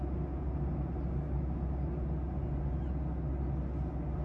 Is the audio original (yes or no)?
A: yes